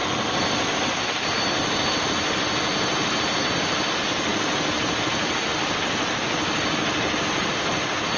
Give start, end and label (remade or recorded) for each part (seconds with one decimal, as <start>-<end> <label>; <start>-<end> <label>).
0.0-8.2 recorded